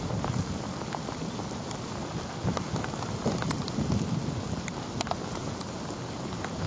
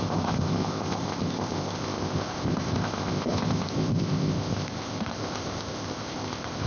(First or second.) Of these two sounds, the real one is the first